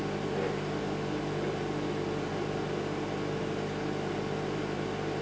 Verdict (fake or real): real